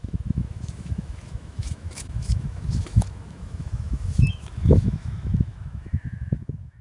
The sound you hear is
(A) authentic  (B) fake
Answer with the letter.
B